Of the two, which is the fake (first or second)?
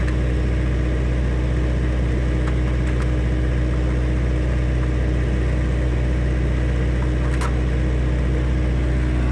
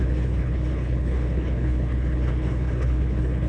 second